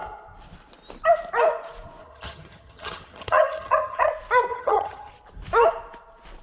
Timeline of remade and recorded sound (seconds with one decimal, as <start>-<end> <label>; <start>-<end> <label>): 0.0-2.0 recorded; 2.0-4.1 remade; 4.1-4.5 recorded; 4.5-5.1 remade; 5.1-6.4 recorded